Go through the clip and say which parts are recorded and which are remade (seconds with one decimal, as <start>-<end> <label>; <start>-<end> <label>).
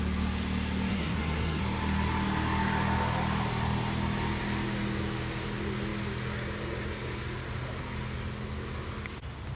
0.0-0.9 recorded; 0.9-1.6 remade; 1.6-9.6 recorded